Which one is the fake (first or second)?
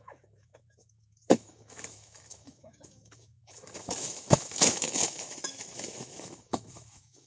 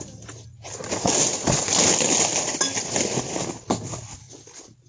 first